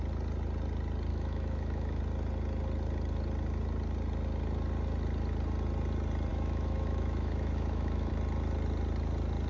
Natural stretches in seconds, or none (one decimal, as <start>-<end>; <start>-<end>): 0.0-1.1; 2.0-6.3; 8.1-9.5